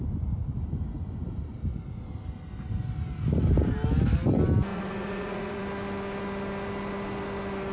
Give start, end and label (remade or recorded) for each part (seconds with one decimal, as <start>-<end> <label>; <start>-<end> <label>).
0.0-4.7 recorded; 4.7-5.6 remade; 5.6-7.7 recorded